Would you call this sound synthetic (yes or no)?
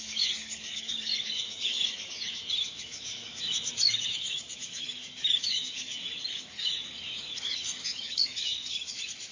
yes